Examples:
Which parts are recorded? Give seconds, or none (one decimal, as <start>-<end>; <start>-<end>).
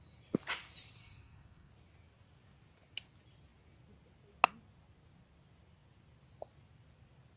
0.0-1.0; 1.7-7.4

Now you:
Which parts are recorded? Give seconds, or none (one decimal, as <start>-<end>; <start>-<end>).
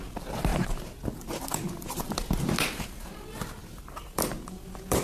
0.0-5.0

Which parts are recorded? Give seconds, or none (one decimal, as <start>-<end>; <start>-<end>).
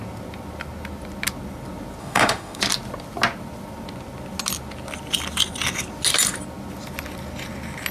0.0-2.0; 2.6-7.9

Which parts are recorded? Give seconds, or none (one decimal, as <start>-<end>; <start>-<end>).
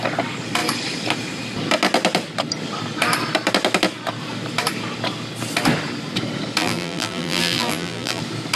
0.0-6.6; 8.2-8.6